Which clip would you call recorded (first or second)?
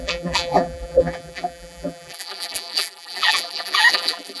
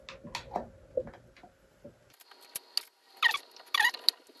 second